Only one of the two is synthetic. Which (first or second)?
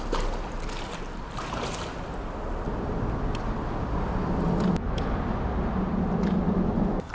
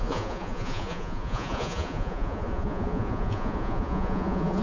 second